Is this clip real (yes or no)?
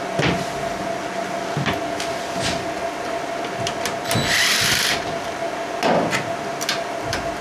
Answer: yes